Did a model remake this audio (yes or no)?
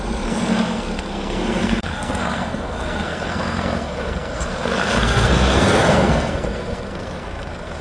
yes